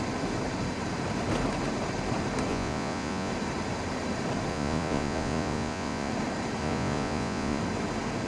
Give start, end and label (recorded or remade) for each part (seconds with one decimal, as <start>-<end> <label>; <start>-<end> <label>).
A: 0.0-2.5 recorded; 2.5-3.3 remade; 3.3-4.5 recorded; 4.5-6.1 remade; 6.1-6.6 recorded; 6.6-7.6 remade; 7.6-8.3 recorded